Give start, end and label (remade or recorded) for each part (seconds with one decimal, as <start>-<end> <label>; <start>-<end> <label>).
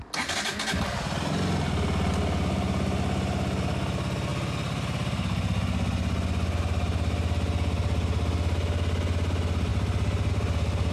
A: 0.0-10.9 recorded